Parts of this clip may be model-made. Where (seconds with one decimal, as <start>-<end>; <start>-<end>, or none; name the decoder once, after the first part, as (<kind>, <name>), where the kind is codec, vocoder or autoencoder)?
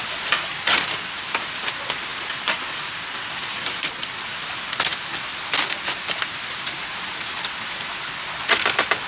none